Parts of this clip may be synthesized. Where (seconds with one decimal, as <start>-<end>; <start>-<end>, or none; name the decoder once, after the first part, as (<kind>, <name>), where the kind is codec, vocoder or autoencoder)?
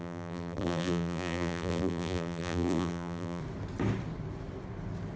0.0-3.4 (vocoder, BigVGAN v2)